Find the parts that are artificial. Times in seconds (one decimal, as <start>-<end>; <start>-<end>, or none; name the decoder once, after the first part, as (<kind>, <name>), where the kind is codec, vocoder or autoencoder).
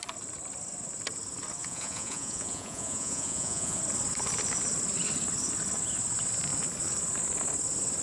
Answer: 1.6-3.8 (vocoder, Vocos)